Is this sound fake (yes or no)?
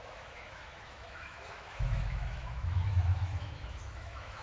yes